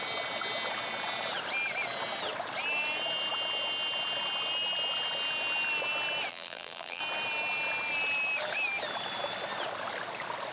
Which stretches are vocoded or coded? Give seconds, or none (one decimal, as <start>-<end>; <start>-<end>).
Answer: 6.3-7.0